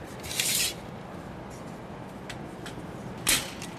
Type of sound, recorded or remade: recorded